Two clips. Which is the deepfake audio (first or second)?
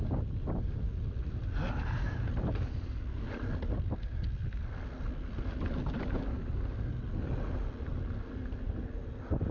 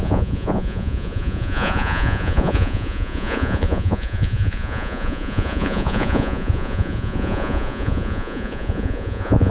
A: second